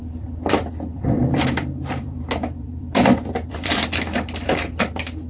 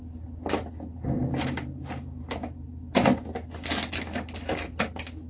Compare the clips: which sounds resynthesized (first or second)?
first